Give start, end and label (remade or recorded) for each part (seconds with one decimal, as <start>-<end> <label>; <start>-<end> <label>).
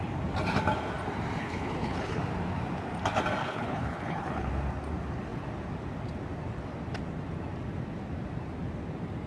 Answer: 0.0-1.4 recorded; 1.4-2.2 remade; 2.2-3.4 recorded; 3.4-4.5 remade; 4.5-9.3 recorded